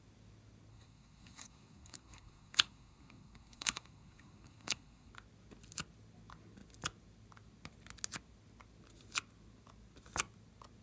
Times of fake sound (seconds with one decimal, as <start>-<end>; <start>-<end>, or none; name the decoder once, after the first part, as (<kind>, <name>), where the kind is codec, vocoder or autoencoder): 0.7-5.1 (codec, SNAC)